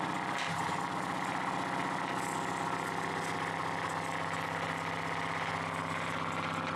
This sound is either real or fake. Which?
real